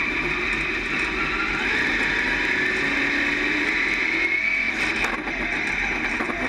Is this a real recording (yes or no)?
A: yes